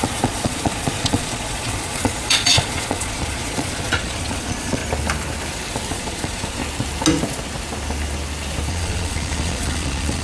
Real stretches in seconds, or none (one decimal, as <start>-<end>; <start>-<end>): 4.8-5.9; 6.6-8.7